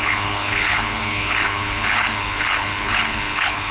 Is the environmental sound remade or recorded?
remade